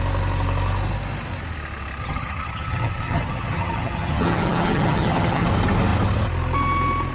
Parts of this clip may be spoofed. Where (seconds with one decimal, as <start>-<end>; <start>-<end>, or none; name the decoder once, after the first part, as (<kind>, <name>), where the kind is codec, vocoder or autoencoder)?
2.0-5.5 (vocoder, HiFi-GAN)